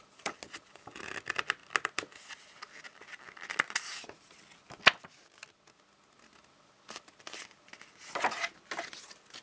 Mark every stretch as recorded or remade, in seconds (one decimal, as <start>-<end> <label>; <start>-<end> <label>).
0.0-9.4 recorded